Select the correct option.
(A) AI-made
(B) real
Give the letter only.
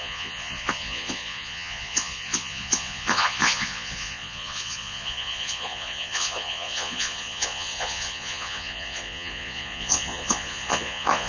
A